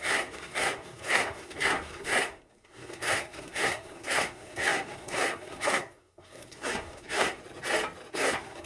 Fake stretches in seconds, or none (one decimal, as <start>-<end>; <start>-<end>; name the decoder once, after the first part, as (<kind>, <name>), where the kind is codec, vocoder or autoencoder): 0.0-7.4 (codec, SNAC); 8.1-8.7